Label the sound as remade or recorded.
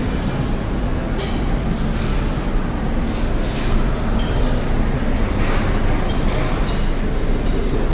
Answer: recorded